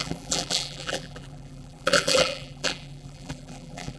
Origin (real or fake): fake